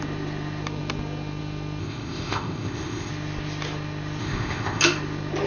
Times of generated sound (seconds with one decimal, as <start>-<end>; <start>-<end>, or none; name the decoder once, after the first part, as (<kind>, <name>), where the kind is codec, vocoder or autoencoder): 1.8-3.1 (codec, ZipCodec); 4.2-4.8